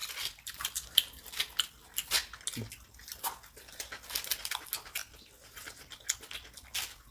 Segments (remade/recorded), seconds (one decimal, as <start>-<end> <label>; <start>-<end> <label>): 0.0-1.3 remade; 1.3-7.1 recorded